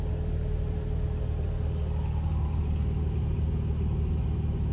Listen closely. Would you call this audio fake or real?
real